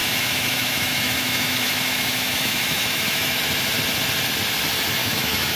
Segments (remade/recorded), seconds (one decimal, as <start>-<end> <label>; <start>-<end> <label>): 0.0-3.4 remade; 3.4-5.0 recorded; 5.0-5.6 remade